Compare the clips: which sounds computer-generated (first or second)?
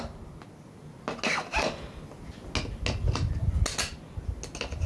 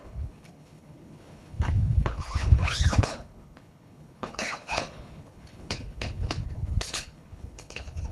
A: second